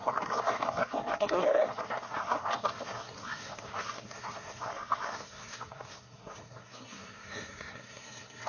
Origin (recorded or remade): remade